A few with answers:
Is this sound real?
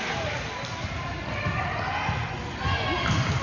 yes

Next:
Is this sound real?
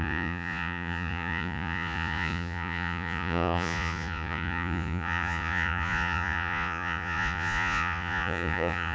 no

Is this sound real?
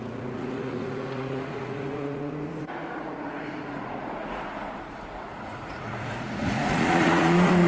no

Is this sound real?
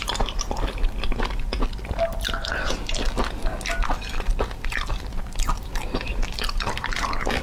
yes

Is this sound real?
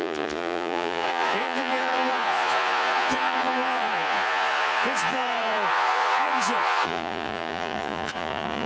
no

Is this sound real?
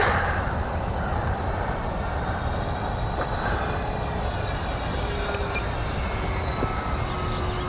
yes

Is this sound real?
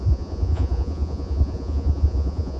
no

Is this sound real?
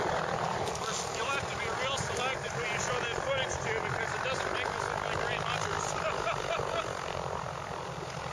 yes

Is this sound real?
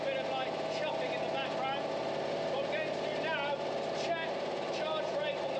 yes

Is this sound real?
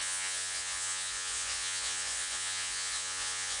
no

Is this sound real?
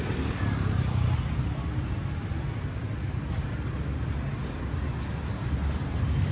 yes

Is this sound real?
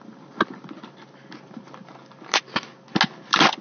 yes